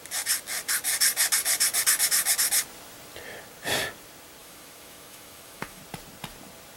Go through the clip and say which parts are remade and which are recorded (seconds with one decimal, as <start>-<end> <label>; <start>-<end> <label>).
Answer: 0.0-4.4 recorded; 4.4-5.8 remade; 5.8-6.8 recorded

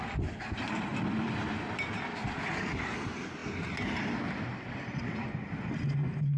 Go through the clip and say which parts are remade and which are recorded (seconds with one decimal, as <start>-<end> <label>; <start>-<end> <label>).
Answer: 0.0-6.4 recorded

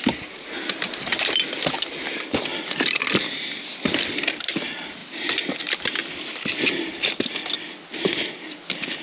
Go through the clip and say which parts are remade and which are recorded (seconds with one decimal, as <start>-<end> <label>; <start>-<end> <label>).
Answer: 0.0-9.0 recorded

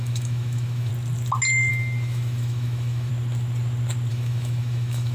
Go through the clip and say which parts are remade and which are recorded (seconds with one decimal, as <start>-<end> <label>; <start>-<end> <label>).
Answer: 0.0-0.9 remade; 0.9-1.7 recorded; 1.7-3.1 remade; 3.1-4.1 recorded; 4.1-5.1 remade

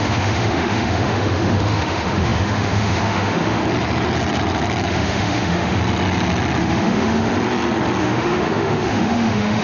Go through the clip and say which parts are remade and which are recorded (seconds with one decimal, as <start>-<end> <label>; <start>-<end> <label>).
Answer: 0.0-3.6 remade; 3.6-4.9 recorded; 4.9-5.8 remade; 5.8-6.6 recorded; 6.6-7.3 remade; 7.3-8.0 recorded; 8.0-9.6 remade